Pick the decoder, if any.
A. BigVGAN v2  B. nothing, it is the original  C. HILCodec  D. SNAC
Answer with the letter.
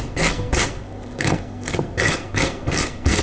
D